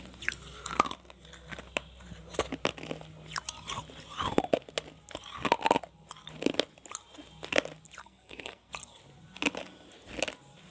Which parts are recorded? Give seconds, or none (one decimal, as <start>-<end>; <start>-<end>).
0.0-8.0; 8.7-10.7